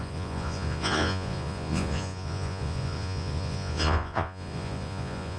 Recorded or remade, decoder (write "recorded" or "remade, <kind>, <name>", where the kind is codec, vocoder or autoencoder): remade, vocoder, Vocos